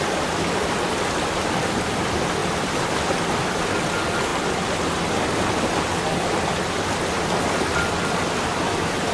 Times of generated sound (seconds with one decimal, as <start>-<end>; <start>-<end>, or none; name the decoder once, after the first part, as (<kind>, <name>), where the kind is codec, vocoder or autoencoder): none